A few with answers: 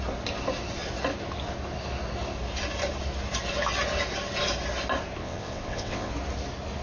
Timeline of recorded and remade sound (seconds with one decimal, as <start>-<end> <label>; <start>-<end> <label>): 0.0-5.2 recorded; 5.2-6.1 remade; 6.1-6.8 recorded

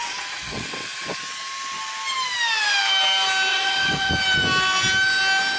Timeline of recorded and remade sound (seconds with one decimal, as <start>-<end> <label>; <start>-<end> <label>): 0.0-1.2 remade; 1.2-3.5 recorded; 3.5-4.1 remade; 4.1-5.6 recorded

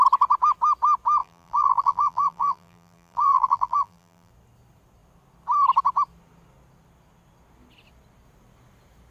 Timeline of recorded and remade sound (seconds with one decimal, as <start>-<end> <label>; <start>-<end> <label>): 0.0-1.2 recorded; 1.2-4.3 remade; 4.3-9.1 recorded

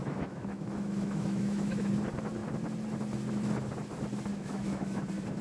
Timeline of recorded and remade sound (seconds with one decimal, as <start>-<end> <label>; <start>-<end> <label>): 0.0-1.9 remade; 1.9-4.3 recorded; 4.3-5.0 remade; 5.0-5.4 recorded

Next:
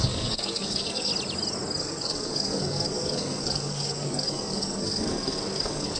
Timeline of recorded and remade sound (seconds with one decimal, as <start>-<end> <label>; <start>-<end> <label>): 0.0-1.1 remade; 1.1-1.8 recorded; 1.8-6.0 remade

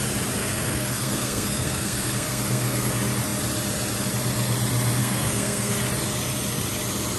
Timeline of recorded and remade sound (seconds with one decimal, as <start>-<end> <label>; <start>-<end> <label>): 0.0-0.4 recorded; 0.4-2.9 remade; 2.9-5.0 recorded; 5.0-5.7 remade; 5.7-7.2 recorded

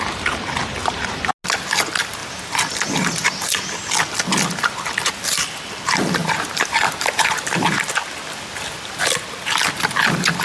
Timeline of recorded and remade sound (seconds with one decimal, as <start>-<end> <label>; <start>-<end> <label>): 0.0-0.8 recorded; 0.8-1.3 remade; 1.3-6.2 recorded; 6.2-7.9 remade; 7.9-10.4 recorded

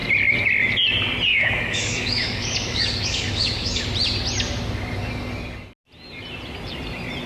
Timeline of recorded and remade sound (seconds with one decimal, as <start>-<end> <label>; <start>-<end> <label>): 0.0-1.3 recorded; 1.3-3.8 remade; 3.8-7.3 recorded